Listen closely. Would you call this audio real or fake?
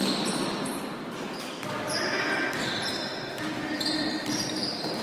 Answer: real